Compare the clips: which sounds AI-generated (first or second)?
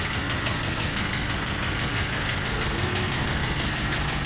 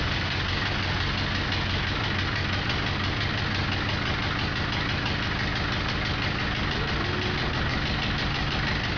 first